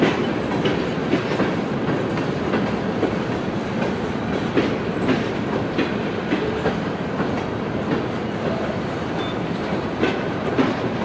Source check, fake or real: real